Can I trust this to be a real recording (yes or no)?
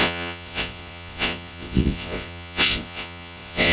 no